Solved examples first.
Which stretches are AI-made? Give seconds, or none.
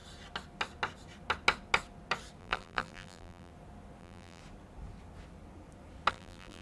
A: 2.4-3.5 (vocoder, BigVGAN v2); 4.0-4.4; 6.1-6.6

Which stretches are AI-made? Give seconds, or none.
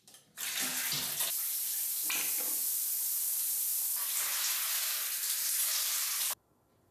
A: 0.0-0.7 (vocoder, BigVGAN v2); 2.2-3.7; 6.2-6.9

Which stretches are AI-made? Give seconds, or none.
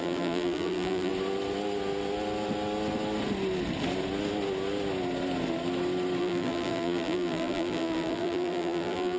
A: 0.0-1.1 (vocoder, BigVGAN v2); 6.2-9.2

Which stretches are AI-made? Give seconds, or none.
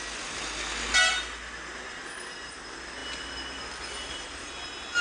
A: none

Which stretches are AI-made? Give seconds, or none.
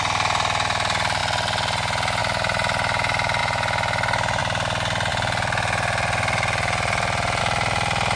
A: none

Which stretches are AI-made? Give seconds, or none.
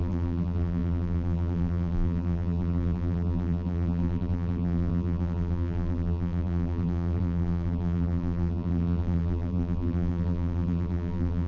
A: 0.0-11.5 (vocoder, BigVGAN v2)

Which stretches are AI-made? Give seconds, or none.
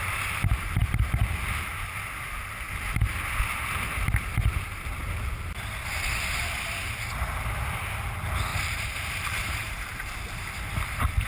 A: 8.5-10.1 (vocoder, BigVGAN v2)